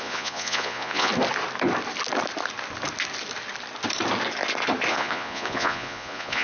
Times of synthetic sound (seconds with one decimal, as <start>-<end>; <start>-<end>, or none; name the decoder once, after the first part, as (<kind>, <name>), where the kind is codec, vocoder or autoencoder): 0.0-1.1 (vocoder, Vocos); 4.9-6.4